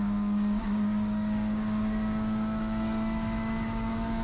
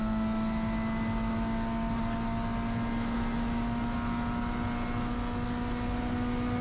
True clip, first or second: second